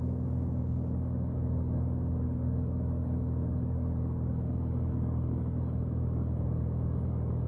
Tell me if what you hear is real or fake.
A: fake